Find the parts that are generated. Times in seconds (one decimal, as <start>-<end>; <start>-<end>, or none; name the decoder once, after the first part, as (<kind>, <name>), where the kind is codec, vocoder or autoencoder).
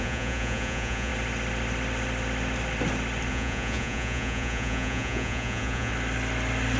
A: 0.0-1.1 (vocoder, Vocos); 3.3-5.9